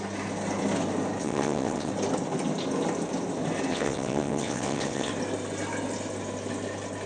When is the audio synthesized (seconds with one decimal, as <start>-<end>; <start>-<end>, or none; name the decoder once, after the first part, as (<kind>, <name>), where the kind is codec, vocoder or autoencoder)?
1.2-1.9 (vocoder, WaveNeXt); 3.7-5.1